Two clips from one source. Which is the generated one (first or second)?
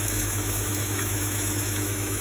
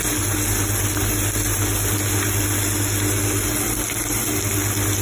first